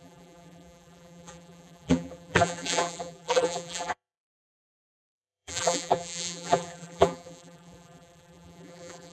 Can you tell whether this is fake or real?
fake